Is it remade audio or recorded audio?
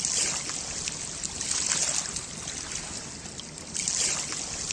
recorded